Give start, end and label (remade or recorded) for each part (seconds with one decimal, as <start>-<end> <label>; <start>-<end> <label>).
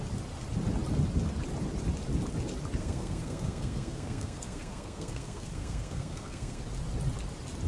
0.0-2.8 recorded; 2.8-6.6 remade; 6.6-7.7 recorded